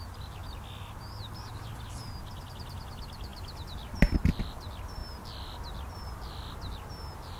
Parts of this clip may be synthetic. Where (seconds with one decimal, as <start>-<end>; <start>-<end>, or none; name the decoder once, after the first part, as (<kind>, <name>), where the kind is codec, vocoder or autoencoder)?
none

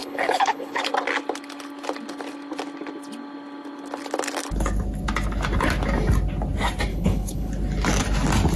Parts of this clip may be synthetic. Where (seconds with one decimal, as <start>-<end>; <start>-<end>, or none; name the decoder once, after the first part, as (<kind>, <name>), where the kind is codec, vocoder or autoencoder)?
0.0-0.8 (codec, HILCodec); 6.9-7.5

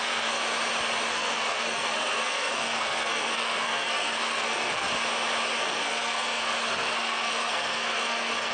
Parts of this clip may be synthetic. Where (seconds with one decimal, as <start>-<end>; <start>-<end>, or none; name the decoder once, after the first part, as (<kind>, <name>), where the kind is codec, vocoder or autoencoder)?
0.0-0.4 (codec, SNAC); 1.1-4.9; 5.6-8.5